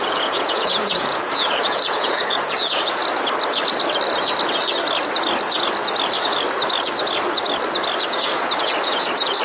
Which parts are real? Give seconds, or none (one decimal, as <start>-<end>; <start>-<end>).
3.0-8.1